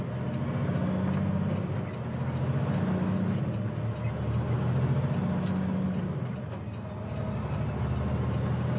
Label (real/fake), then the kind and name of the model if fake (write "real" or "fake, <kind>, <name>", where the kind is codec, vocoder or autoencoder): real